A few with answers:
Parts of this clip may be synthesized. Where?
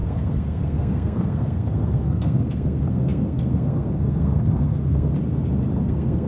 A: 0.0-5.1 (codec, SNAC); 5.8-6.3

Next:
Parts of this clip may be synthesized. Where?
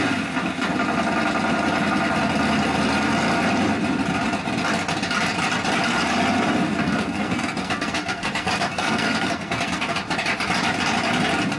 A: 6.8-10.0 (codec, SNAC)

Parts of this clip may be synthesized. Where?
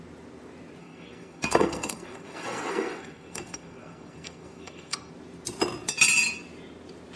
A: 0.8-5.1 (codec, SNAC)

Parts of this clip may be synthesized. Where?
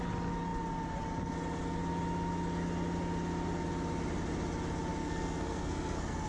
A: 5.0-6.3 (codec, SNAC)